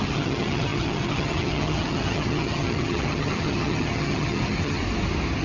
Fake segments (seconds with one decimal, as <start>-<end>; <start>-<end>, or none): 0.0-4.8